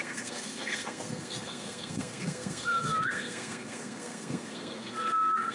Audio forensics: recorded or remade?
remade